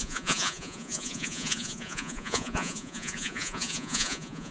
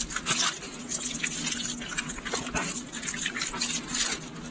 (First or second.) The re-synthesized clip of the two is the first